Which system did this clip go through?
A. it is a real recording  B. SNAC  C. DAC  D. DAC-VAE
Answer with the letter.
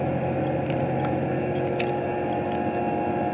A